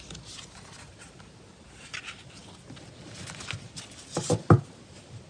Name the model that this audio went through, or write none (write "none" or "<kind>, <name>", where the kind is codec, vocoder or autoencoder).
none